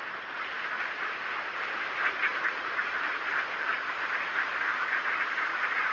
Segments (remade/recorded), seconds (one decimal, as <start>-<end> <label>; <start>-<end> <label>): 0.0-0.8 remade; 0.8-3.7 recorded; 3.7-5.9 remade